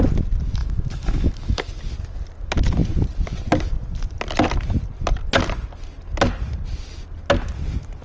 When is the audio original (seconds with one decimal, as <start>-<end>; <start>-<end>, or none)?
0.0-0.6; 1.7-8.0